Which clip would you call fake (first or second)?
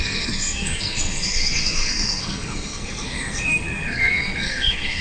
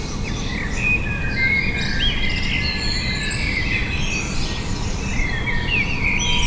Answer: first